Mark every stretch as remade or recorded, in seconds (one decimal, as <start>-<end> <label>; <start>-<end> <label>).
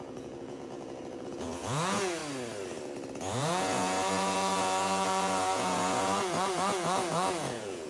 0.0-2.2 remade; 2.2-3.2 recorded; 3.2-7.9 remade